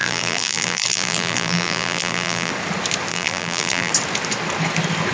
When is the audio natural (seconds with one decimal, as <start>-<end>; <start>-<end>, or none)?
2.5-3.1; 3.9-5.1